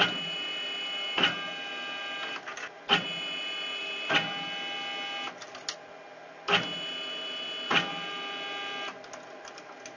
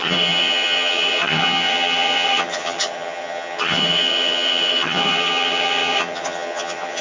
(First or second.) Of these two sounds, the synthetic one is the second